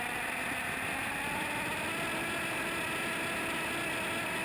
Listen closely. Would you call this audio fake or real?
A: real